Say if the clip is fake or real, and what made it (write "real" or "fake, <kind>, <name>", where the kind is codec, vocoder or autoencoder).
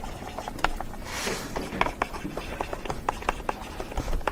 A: fake, vocoder, BigVGAN v2